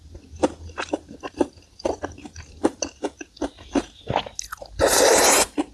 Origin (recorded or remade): recorded